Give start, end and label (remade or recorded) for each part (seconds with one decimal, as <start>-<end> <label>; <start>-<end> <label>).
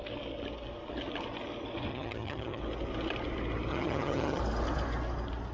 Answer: 0.0-1.9 recorded; 1.9-2.6 remade; 2.6-3.7 recorded; 3.7-4.4 remade; 4.4-5.5 recorded